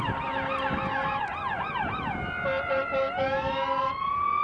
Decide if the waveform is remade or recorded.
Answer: recorded